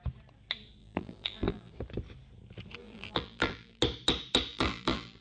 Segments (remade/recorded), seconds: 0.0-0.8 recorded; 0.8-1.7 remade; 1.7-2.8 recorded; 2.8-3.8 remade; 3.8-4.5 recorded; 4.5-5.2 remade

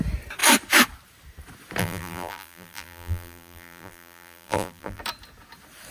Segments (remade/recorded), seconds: 0.0-1.8 recorded; 1.8-5.0 remade; 5.0-5.9 recorded

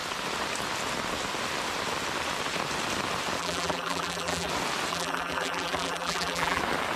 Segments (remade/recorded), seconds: 0.0-3.4 recorded; 3.4-4.5 remade; 4.5-4.9 recorded; 4.9-6.6 remade; 6.6-7.0 recorded